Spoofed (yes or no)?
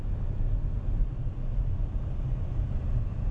no